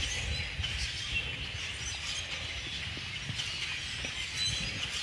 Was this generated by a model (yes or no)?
no